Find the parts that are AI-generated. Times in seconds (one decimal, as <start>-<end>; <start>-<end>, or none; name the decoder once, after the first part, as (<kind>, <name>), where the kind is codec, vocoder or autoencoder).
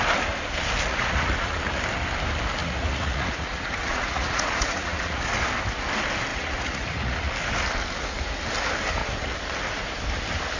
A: 0.9-1.8 (vocoder, Vocos); 2.6-5.3; 6.3-7.3